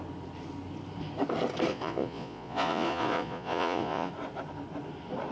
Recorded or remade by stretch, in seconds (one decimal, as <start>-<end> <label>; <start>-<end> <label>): 0.0-1.7 recorded; 1.7-4.1 remade; 4.1-5.3 recorded

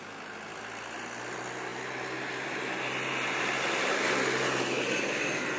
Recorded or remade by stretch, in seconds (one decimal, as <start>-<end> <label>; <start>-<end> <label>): 0.0-5.6 recorded

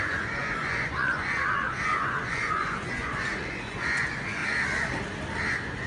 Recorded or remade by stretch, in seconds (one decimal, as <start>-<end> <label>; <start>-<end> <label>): 0.0-4.4 remade; 4.4-5.5 recorded; 5.5-5.9 remade

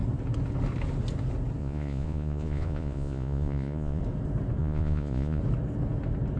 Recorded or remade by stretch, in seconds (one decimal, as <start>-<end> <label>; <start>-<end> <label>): 0.0-1.6 recorded; 1.6-4.0 remade; 4.0-4.6 recorded; 4.6-5.4 remade; 5.4-6.4 recorded

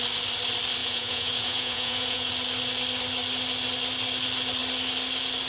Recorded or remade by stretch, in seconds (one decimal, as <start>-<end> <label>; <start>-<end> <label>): 0.0-0.8 recorded; 0.8-2.3 remade; 2.3-5.5 recorded

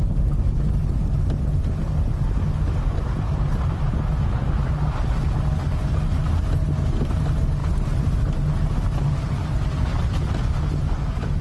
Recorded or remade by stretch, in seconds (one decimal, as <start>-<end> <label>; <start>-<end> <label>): 0.0-11.4 recorded

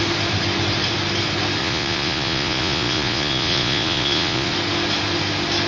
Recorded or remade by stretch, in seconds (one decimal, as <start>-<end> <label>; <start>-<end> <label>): 0.0-1.6 recorded; 1.6-4.5 remade; 4.5-5.7 recorded